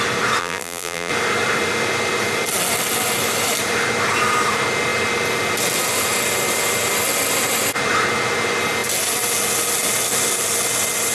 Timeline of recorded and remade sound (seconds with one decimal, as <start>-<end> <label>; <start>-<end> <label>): 0.0-0.4 recorded; 0.4-1.1 remade; 1.1-11.1 recorded